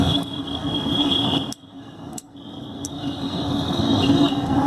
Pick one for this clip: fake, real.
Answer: fake